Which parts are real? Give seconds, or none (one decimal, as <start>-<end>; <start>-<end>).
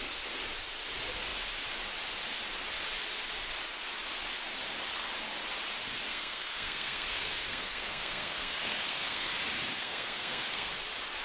0.0-6.1; 9.3-9.8; 10.7-11.2